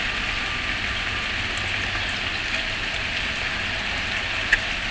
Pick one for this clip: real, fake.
real